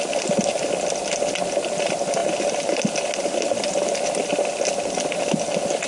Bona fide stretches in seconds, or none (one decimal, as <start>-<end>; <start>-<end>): 0.0-5.9